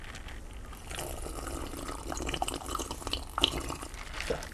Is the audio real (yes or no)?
yes